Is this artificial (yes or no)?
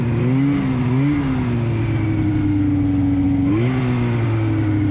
no